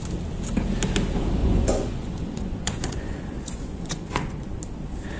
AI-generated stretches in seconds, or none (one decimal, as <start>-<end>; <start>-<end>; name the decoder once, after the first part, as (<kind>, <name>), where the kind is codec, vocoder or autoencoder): 1.4-4.5 (vocoder, Vocos)